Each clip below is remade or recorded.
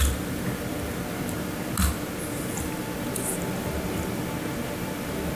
recorded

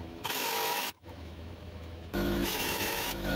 remade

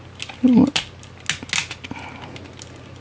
recorded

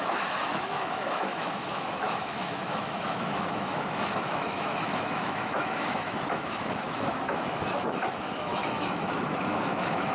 remade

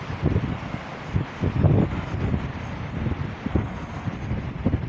recorded